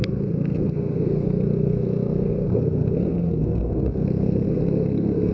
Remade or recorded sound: remade